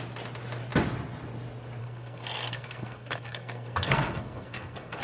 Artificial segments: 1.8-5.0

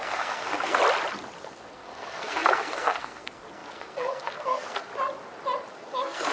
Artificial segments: 0.0-0.8; 1.4-4.9; 5.7-6.3

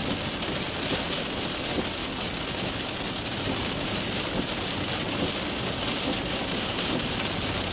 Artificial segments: none

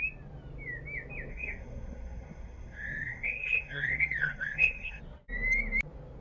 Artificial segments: 1.3-5.0

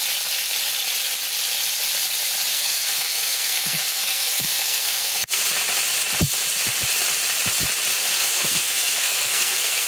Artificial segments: 2.5-5.4; 7.9-9.9